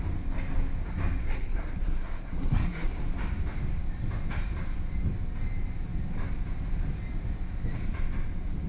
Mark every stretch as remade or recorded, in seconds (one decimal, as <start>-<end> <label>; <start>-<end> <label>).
0.0-1.2 recorded; 1.2-2.9 remade; 2.9-8.7 recorded